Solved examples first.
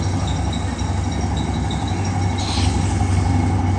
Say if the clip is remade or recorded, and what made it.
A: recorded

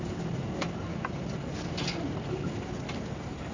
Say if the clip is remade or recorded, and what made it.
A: recorded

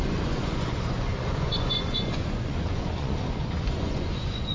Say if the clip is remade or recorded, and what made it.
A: remade, vocoder, Vocos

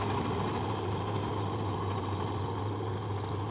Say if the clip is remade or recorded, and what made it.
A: recorded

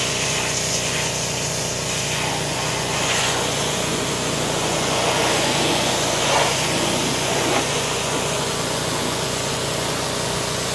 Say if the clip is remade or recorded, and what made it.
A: remade, vocoder, Vocos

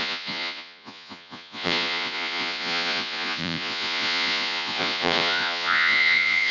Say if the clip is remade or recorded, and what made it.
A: remade, vocoder, Vocos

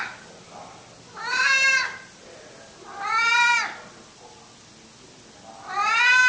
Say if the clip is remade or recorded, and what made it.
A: recorded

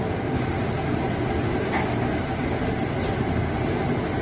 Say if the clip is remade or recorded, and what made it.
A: recorded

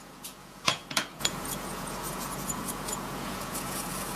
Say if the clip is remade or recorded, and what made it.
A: remade, vocoder, Vocos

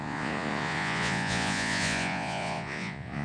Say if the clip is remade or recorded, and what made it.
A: remade, vocoder, Vocos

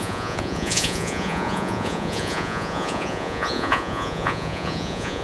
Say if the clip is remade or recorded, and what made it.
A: remade, vocoder, Vocos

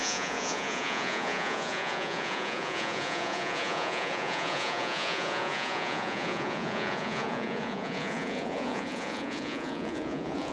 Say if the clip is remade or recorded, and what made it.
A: remade, vocoder, Vocos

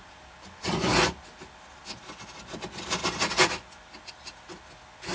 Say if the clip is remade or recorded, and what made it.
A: recorded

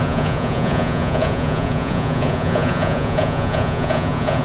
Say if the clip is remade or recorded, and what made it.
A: remade, vocoder, Vocos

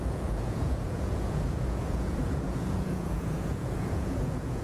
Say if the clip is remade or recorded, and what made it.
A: remade, vocoder, Vocos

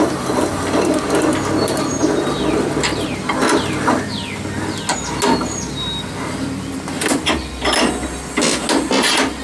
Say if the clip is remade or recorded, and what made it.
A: recorded